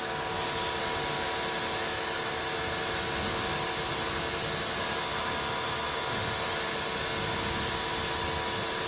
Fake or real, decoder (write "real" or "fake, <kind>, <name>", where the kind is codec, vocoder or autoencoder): real